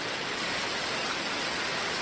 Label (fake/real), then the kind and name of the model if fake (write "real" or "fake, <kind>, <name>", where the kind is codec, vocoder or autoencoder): real